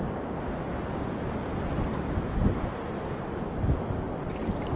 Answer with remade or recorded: recorded